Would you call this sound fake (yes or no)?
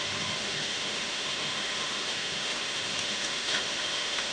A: yes